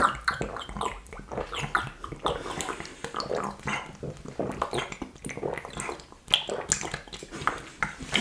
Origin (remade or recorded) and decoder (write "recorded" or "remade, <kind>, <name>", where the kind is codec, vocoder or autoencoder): recorded